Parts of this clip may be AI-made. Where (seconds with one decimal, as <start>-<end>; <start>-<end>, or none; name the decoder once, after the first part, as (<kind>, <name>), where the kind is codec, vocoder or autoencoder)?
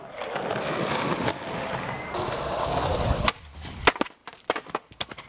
4.2-5.3 (vocoder, BigVGAN v2)